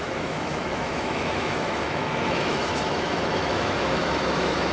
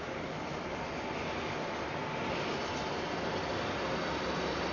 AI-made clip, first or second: first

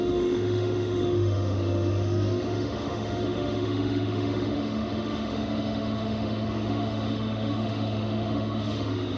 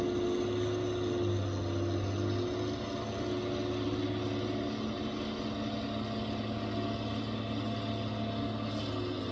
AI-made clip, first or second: first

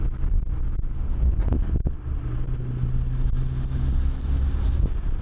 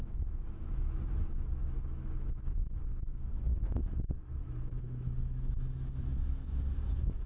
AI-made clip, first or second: second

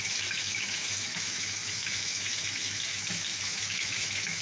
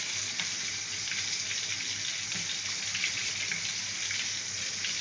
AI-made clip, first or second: first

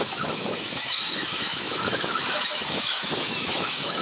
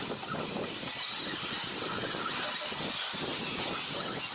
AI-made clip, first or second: first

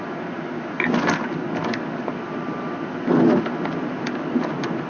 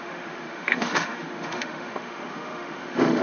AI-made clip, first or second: second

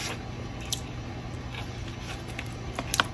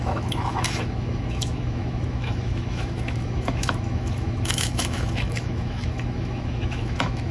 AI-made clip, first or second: second